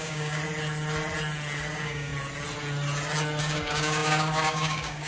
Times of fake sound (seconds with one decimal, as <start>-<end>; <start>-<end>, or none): 0.0-0.4; 1.7-2.1; 3.4-5.1